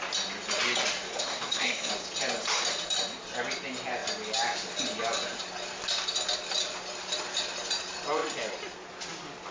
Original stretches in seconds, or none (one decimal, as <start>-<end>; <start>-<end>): 0.0-1.1; 1.9-9.5